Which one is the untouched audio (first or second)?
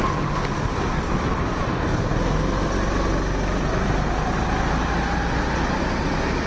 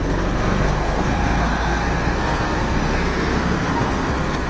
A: first